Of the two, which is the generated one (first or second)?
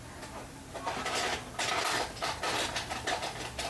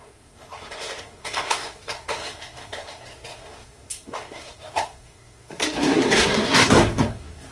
second